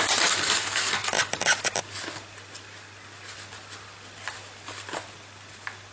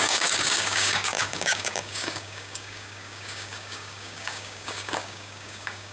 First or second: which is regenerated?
second